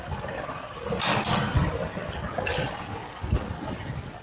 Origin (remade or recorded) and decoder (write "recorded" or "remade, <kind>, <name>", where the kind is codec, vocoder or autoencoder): recorded